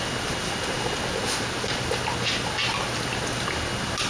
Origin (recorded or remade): recorded